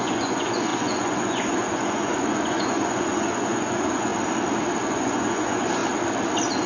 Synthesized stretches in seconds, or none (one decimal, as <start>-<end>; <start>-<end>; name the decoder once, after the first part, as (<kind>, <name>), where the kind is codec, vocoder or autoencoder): 0.0-4.1 (vocoder, Vocos); 4.8-5.8